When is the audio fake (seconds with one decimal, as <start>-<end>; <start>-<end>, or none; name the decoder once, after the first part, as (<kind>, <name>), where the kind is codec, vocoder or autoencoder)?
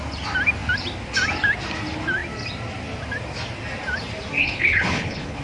4.4-5.4 (codec, HILCodec)